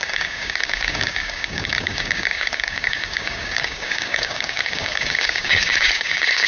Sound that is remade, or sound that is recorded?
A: remade